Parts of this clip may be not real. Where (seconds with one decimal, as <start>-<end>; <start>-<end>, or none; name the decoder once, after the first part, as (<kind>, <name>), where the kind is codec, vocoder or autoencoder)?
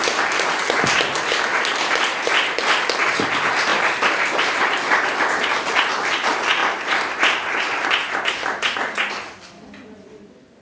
none